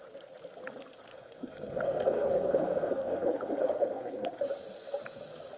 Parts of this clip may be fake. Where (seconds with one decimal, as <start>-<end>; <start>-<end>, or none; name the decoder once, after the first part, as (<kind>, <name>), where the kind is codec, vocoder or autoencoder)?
1.1-4.5 (codec, SNAC)